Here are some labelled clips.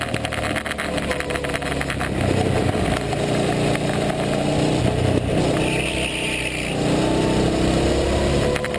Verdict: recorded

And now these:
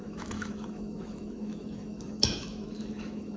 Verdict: remade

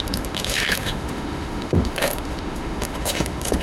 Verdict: remade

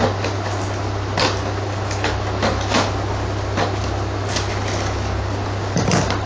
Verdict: recorded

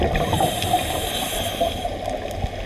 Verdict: recorded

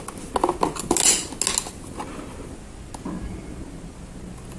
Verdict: recorded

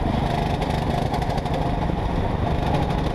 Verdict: recorded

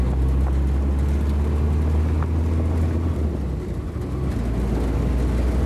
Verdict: recorded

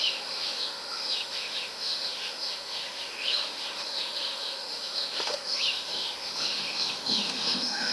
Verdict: remade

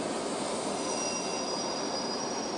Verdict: recorded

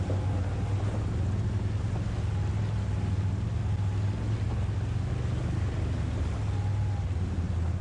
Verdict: recorded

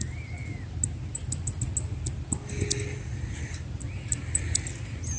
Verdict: recorded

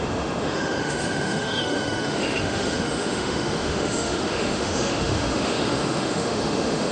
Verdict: remade